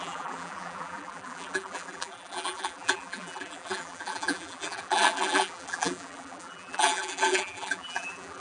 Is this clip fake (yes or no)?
yes